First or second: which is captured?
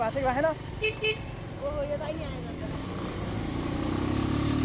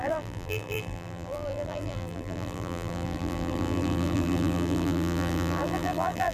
first